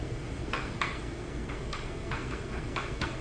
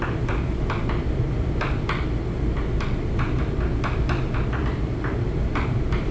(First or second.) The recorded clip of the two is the second